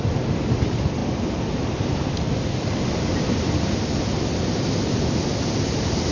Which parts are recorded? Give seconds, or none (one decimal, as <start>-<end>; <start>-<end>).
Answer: 0.0-6.1